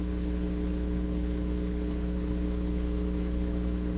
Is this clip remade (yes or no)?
yes